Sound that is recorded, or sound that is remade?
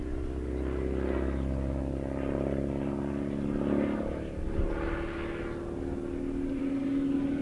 recorded